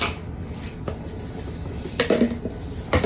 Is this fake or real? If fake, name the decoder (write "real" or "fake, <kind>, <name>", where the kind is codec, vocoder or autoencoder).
real